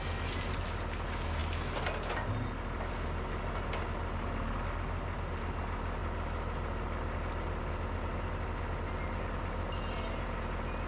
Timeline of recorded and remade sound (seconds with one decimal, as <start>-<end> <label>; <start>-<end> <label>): 0.0-10.9 recorded